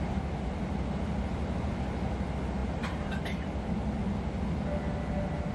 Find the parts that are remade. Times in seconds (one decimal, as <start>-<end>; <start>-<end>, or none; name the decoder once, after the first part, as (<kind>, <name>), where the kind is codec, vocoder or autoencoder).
none